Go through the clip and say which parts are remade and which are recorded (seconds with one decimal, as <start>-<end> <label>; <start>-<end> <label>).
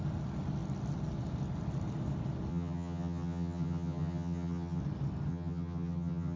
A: 0.0-2.5 recorded; 2.5-4.8 remade; 4.8-5.3 recorded; 5.3-6.4 remade